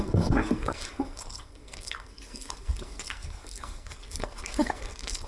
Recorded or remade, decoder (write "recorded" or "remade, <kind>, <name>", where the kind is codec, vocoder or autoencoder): remade, codec, SNAC